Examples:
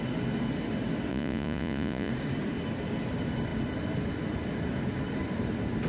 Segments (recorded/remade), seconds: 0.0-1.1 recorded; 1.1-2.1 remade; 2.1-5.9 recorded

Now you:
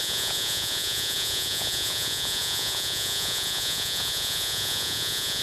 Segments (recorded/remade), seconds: 0.0-5.4 remade

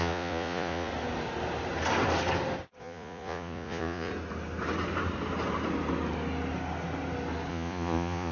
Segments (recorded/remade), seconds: 0.0-0.9 remade; 0.9-2.8 recorded; 2.8-4.1 remade; 4.1-7.5 recorded; 7.5-8.3 remade

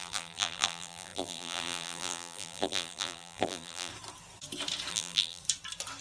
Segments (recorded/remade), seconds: 0.0-3.9 remade; 3.9-4.9 recorded; 4.9-5.4 remade; 5.4-6.0 recorded